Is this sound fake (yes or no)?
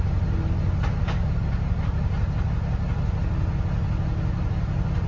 no